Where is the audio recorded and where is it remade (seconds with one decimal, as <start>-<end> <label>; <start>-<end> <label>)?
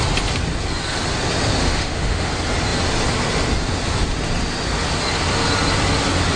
0.0-1.6 recorded; 1.6-2.3 remade; 2.3-6.4 recorded